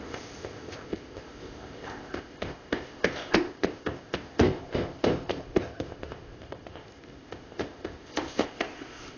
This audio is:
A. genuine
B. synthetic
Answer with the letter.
B